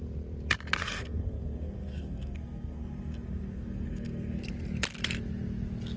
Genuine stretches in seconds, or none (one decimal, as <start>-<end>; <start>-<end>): 0.0-0.8; 4.4-6.0